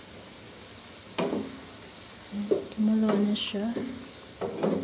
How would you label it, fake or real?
real